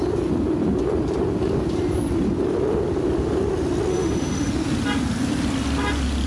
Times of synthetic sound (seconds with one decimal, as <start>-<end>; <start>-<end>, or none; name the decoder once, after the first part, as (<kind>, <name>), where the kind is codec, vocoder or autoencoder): 3.9-4.5 (autoencoder, DAC-VAE)